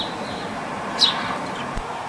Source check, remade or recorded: recorded